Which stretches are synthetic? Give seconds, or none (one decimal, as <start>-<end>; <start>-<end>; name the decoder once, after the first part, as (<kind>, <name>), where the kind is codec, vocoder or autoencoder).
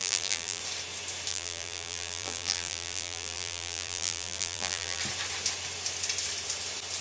0.0-0.6 (vocoder, BigVGAN v2); 1.3-5.0